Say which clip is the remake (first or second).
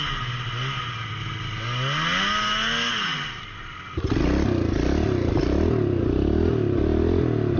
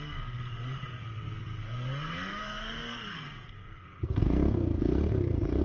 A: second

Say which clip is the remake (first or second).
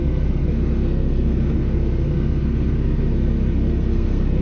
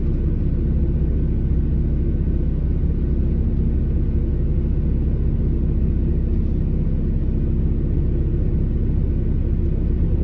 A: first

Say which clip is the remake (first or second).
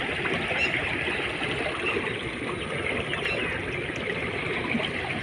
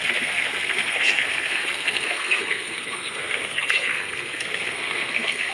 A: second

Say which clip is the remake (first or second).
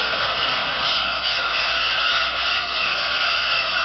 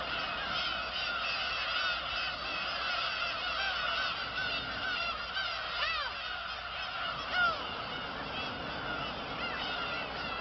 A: first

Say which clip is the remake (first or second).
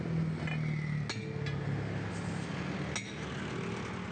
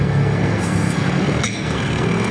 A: second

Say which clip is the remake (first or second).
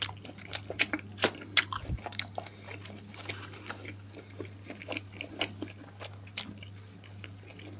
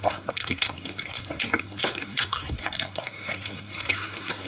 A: second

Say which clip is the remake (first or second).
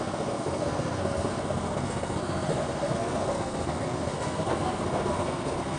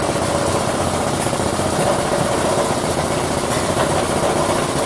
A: first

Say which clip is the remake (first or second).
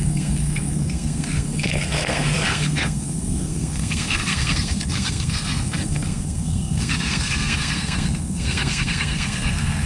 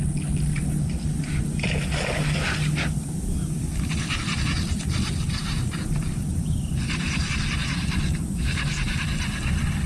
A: first